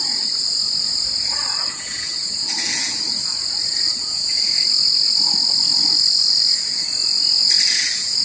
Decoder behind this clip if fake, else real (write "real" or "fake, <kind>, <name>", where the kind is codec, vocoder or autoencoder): fake, vocoder, Vocos